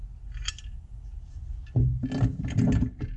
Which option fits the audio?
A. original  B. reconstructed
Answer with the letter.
A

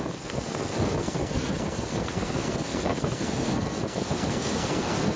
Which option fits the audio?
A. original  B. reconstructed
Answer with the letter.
B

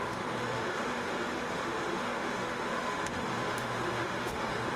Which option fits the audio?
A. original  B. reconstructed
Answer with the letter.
B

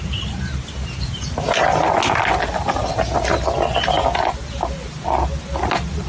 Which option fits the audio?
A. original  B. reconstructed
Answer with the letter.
A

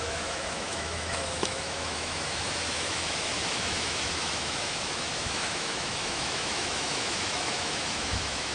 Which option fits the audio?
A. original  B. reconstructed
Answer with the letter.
B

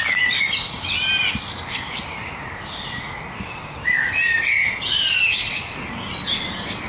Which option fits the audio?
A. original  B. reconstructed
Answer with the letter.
A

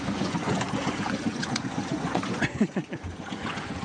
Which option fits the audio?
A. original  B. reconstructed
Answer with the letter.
B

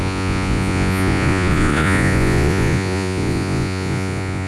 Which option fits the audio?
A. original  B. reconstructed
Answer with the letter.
B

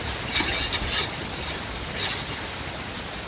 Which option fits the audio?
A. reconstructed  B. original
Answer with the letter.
B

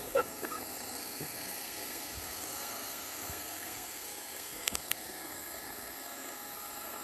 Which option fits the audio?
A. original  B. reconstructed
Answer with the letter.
B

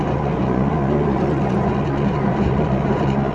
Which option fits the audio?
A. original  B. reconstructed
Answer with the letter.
B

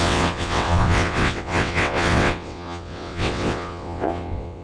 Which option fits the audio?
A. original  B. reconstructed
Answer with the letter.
B